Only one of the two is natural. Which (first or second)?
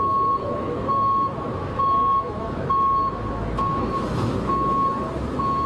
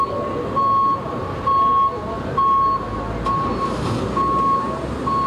second